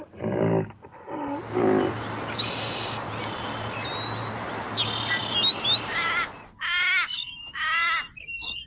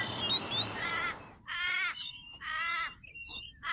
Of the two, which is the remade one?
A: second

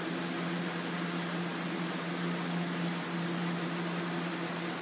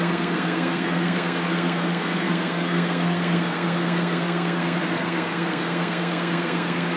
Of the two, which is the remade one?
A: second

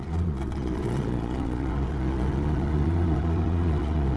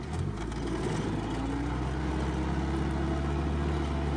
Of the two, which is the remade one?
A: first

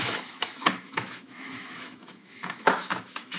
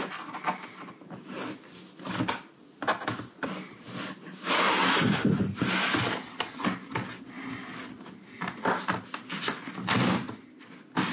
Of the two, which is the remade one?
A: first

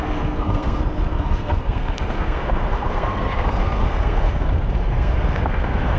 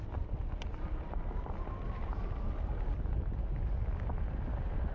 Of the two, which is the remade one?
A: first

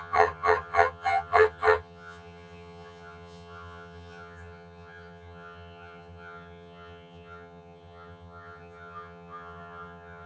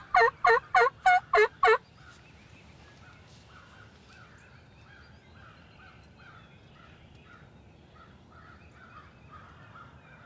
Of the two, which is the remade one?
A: first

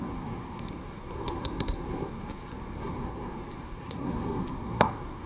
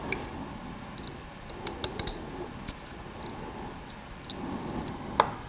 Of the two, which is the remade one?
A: first